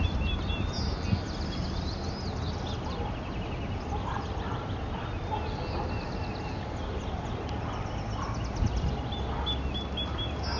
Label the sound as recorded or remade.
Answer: recorded